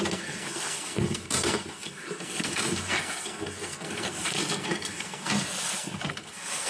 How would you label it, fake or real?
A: fake